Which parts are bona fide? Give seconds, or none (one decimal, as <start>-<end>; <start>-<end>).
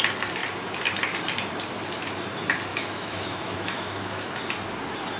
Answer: 0.0-2.7; 4.4-5.2